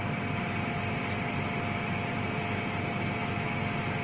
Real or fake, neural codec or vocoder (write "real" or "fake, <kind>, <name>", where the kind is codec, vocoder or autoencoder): fake, vocoder, BigVGAN v2